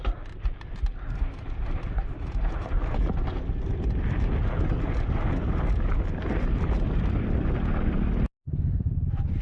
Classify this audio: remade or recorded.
recorded